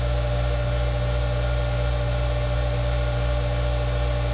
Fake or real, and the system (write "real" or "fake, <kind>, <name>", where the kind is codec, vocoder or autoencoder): real